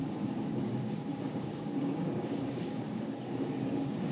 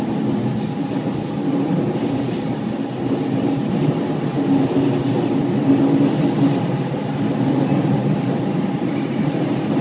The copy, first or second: first